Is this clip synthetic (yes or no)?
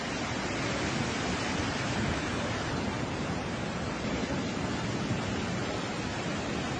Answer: no